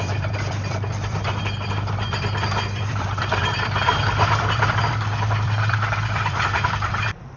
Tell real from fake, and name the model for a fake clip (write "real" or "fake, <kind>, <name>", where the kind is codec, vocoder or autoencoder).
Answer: fake, vocoder, BigVGAN v2